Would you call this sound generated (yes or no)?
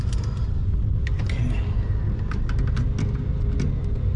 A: no